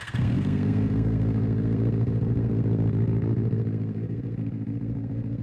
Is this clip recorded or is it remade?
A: remade